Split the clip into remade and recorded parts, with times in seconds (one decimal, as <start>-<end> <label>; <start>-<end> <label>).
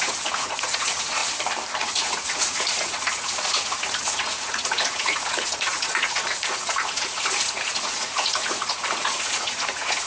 0.0-1.2 remade; 1.2-1.8 recorded; 1.8-10.1 remade